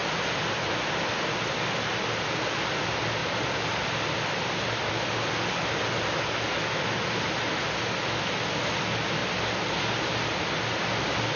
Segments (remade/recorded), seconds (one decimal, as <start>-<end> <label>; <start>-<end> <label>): 0.0-11.4 recorded